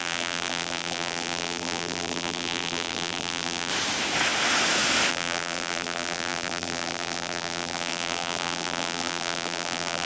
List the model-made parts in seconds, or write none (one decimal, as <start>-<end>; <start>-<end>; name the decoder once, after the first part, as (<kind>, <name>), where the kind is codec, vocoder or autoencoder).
0.0-3.7 (vocoder, BigVGAN v2); 5.1-10.1